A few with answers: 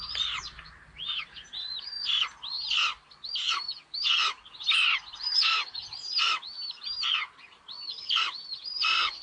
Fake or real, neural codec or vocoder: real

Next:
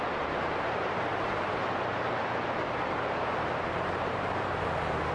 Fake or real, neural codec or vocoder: fake, vocoder, BigVGAN v2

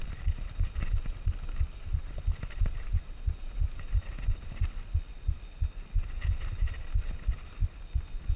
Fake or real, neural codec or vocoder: real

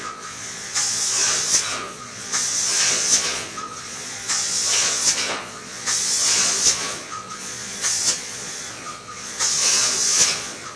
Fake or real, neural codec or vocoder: fake, vocoder, Vocos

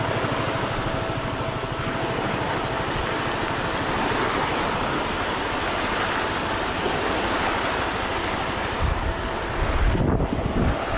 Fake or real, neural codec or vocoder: real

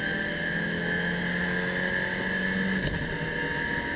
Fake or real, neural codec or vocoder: real